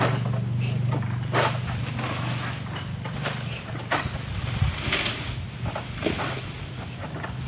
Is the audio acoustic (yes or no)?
no